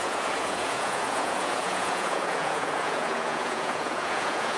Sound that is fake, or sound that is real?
fake